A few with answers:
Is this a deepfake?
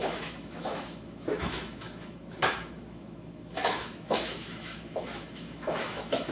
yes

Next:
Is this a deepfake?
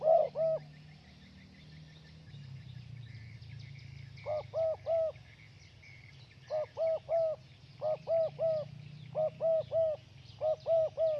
no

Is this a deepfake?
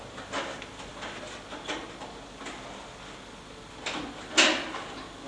no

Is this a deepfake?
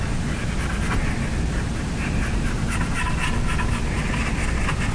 no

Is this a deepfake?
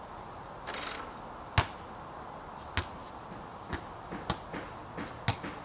no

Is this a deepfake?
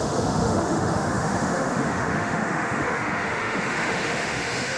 yes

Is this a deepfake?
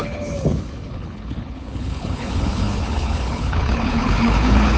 yes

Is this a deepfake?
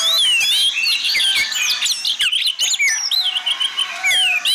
no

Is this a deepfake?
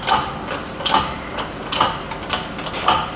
no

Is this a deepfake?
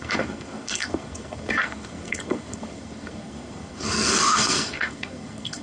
yes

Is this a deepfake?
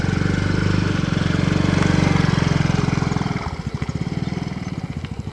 no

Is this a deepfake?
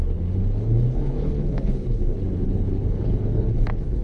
yes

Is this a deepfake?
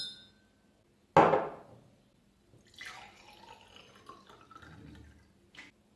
no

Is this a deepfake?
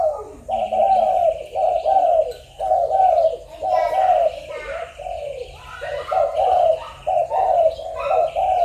no